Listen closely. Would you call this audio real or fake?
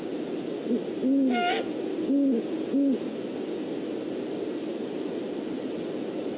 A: real